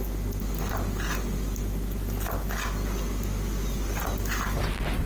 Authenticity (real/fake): real